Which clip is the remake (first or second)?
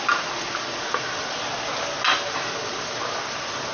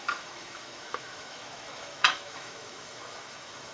second